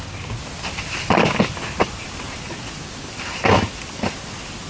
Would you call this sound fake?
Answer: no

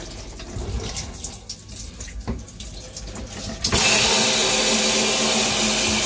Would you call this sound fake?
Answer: no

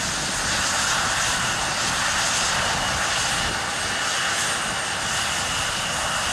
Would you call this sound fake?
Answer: no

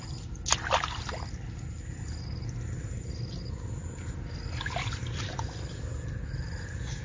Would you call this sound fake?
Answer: no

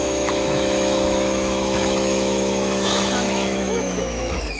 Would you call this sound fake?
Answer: yes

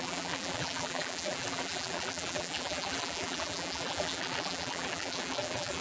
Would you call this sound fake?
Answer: yes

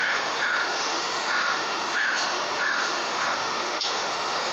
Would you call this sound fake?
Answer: yes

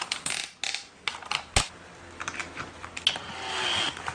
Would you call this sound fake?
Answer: no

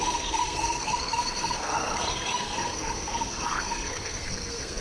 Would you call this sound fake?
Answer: yes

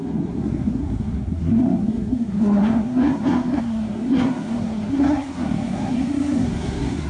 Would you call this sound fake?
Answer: yes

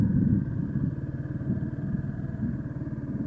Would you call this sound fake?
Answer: no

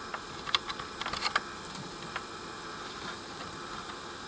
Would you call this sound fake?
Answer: no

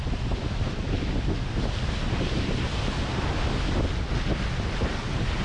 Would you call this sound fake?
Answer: no